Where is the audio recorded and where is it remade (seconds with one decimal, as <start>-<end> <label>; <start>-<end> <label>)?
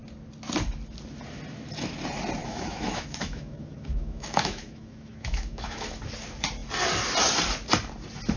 0.0-2.4 recorded; 2.4-6.0 remade; 6.0-8.4 recorded